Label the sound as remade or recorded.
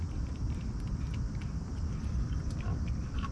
recorded